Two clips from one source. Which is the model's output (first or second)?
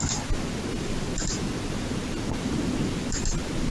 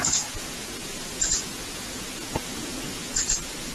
second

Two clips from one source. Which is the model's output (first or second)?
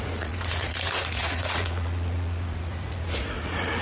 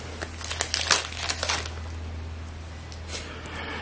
first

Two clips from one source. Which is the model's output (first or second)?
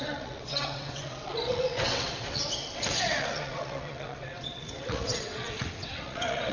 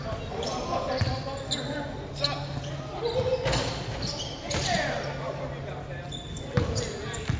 first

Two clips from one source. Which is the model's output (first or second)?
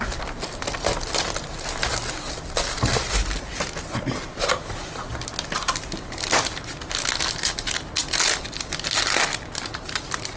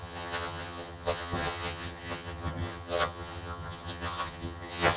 second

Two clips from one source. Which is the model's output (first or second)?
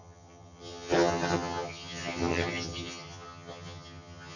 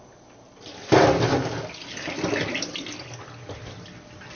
first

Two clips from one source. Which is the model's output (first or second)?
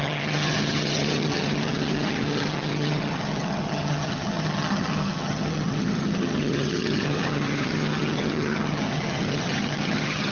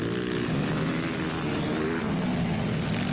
first